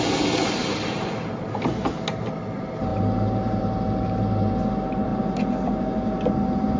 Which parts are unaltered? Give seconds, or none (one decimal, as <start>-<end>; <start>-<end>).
0.0-6.8